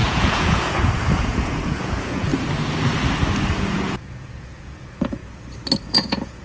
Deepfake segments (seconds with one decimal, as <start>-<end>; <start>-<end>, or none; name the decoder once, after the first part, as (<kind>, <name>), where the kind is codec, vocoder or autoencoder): 0.0-2.3 (vocoder, Vocos); 3.5-5.2; 5.8-6.4